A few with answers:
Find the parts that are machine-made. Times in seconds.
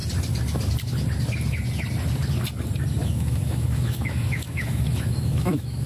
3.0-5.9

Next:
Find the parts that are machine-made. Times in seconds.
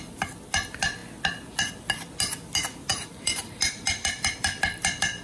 2.9-3.7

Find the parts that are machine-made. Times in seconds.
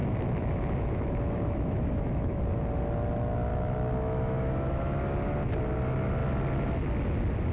0.0-2.4; 3.5-5.0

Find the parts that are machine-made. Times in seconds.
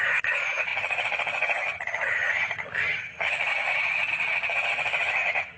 0.0-5.6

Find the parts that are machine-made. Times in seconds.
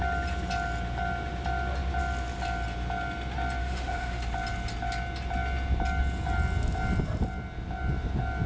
3.6-4.2